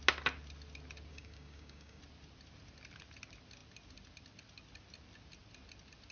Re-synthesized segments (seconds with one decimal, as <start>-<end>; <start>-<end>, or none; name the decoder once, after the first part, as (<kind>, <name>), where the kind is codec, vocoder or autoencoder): 1.1-2.0 (codec, DAC)